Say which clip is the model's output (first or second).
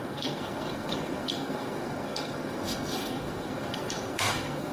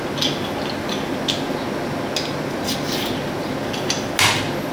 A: first